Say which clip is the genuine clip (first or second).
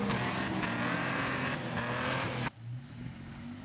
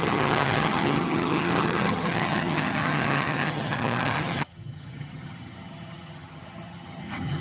first